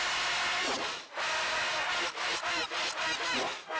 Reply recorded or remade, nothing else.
recorded